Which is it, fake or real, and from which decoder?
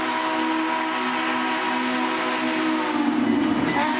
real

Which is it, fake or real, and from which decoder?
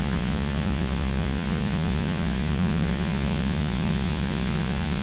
fake, vocoder, Vocos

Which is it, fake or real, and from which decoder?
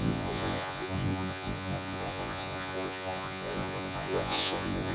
fake, vocoder, Vocos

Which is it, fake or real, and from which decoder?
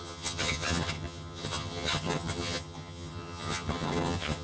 fake, vocoder, HiFi-GAN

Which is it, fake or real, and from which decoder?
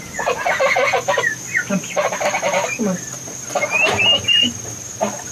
real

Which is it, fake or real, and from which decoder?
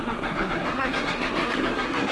fake, codec, SNAC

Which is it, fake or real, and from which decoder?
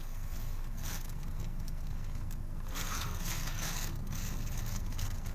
fake, codec, SNAC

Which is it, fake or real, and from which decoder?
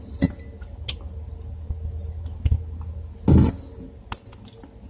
real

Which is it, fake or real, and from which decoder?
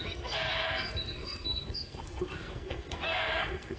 fake, codec, SNAC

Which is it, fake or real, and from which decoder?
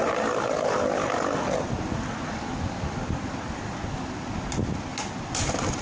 real